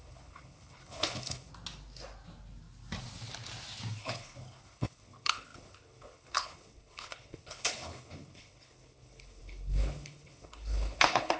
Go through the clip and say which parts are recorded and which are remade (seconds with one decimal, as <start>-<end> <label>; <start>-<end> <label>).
0.0-1.5 remade; 1.5-4.0 recorded; 4.0-11.4 remade